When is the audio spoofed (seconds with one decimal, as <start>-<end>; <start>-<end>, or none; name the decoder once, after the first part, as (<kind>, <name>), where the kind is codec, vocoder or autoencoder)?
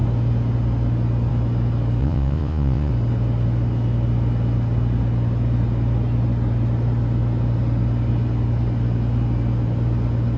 2.0-2.9 (vocoder, Vocos)